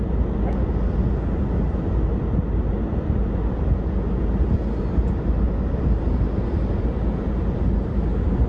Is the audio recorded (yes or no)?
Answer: yes